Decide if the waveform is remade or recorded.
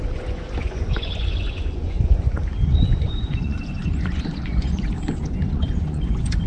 remade